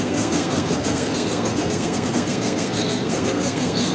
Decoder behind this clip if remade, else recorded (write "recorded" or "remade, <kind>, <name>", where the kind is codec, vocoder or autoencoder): remade, codec, SNAC